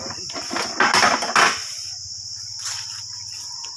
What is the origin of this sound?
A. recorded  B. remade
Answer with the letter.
A